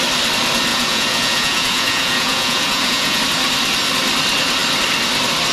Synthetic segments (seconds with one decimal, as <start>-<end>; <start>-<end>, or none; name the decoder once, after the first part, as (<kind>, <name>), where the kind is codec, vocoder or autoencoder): 0.7-3.2 (vocoder, Vocos)